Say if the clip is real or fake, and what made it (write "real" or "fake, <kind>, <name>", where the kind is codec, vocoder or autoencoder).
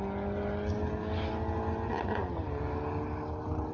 real